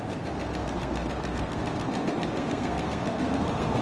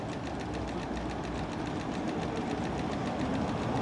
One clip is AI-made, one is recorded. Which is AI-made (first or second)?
first